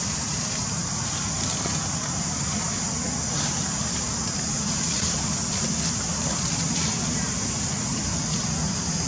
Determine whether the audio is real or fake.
real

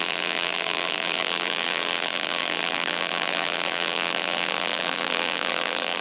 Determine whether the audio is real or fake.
fake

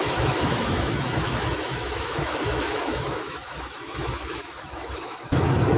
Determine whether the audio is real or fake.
fake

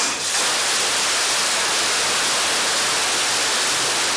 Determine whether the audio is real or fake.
real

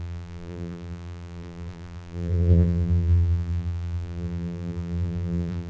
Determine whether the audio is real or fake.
fake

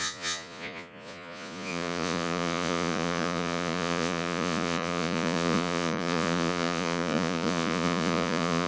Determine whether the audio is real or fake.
fake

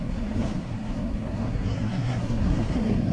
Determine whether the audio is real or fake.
fake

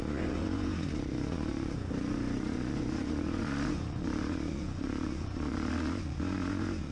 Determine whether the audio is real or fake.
fake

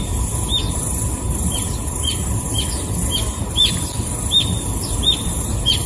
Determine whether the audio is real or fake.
real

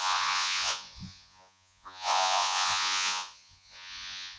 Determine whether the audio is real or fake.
fake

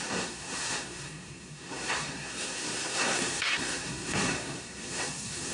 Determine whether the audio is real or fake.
fake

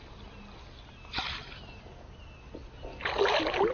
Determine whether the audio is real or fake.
real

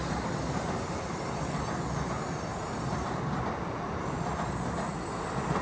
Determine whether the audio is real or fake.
real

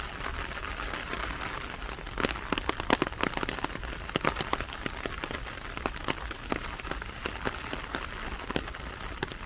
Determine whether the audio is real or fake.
real